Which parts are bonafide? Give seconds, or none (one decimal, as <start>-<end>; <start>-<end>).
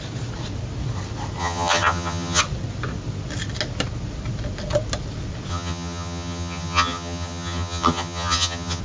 0.0-1.4; 2.4-5.5